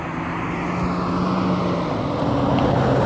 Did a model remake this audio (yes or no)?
no